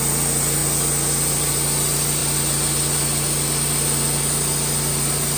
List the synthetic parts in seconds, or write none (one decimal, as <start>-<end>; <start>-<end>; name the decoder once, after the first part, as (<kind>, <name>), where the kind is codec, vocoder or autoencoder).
none